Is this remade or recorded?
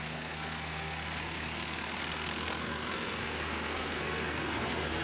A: remade